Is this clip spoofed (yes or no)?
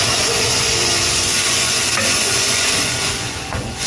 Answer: yes